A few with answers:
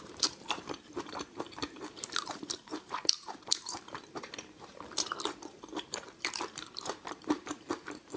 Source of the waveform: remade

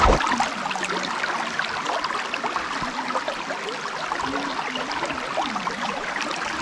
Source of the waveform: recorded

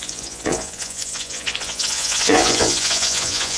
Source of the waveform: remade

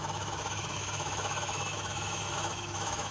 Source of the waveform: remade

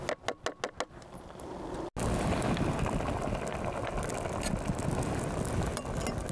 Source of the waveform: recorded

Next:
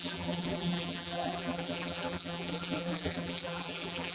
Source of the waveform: remade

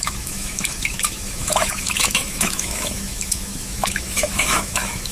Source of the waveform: remade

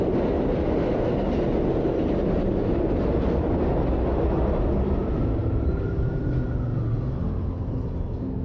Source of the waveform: recorded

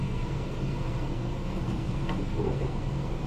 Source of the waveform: remade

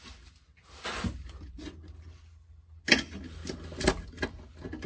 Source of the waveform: recorded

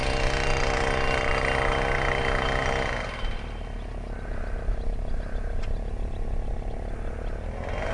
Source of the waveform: recorded